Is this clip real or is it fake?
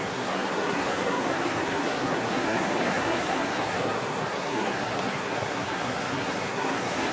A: fake